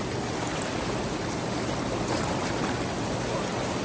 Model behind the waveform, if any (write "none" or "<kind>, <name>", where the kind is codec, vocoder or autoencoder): none